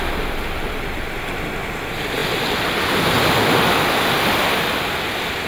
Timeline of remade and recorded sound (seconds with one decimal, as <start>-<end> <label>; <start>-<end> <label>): 0.0-5.5 recorded